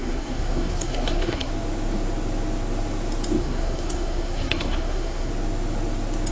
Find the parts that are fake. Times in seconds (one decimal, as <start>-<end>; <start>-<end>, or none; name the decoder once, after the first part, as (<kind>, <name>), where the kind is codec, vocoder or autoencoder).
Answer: 0.0-1.5 (codec, SNAC); 3.4-5.3